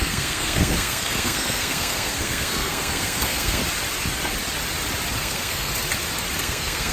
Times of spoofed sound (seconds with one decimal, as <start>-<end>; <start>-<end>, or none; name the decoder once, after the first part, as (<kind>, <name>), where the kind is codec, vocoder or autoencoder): 0.0-3.6 (codec, SNAC); 5.2-5.7; 6.4-6.9